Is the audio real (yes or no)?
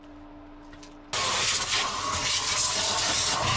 yes